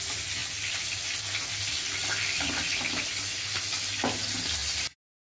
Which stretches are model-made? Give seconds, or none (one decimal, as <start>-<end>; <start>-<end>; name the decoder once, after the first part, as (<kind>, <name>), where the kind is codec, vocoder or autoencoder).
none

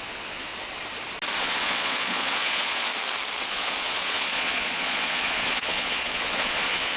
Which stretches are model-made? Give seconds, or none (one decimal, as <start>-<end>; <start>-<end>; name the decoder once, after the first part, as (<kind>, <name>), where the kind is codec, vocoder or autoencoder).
0.0-0.5 (vocoder, Vocos); 1.4-2.9; 3.5-7.0

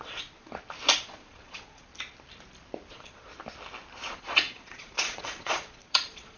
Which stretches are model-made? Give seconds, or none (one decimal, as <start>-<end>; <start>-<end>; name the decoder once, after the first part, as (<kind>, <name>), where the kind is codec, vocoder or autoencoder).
0.0-0.5 (vocoder, Vocos); 1.0-1.9; 2.9-3.3; 4.1-6.4

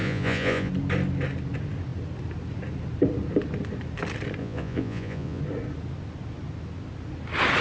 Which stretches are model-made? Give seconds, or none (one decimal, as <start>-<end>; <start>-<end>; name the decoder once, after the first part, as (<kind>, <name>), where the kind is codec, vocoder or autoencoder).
0.0-0.7 (vocoder, Vocos); 4.4-5.4

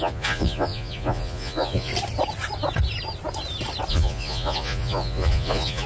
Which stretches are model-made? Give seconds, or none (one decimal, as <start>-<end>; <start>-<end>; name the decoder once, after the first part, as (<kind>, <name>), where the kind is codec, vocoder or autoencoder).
0.0-1.9 (vocoder, Vocos); 3.9-5.9

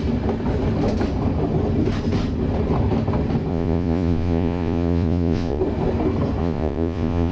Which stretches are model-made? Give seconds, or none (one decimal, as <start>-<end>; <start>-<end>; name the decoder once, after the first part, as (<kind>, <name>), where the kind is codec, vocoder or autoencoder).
3.5-5.6 (vocoder, Vocos); 6.4-7.3